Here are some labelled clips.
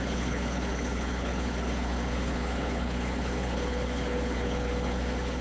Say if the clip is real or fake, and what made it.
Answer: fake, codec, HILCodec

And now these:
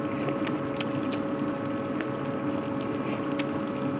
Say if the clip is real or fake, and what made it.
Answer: real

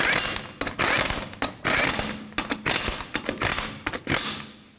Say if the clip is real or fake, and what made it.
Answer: real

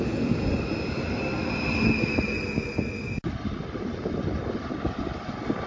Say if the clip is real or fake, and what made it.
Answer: real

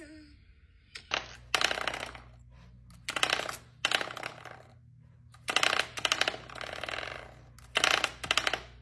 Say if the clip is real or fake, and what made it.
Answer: real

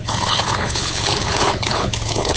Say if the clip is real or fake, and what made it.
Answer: fake, codec, HILCodec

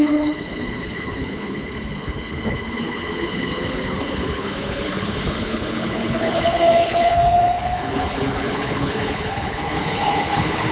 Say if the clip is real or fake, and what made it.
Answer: fake, codec, HILCodec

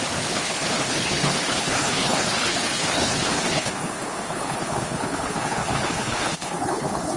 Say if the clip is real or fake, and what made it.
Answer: fake, codec, HILCodec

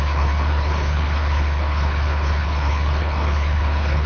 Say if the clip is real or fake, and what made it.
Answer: fake, codec, HILCodec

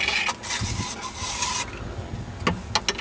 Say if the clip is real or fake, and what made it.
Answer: real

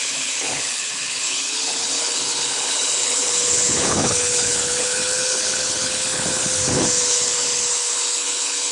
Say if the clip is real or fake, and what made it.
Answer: fake, codec, HILCodec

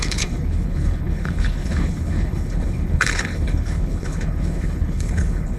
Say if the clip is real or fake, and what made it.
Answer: fake, codec, HILCodec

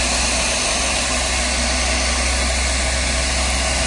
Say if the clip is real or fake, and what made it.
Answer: real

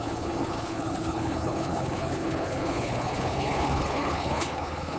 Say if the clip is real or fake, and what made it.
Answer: fake, codec, HILCodec